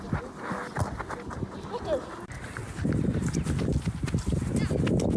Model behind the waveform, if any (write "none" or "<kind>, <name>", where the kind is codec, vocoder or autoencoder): none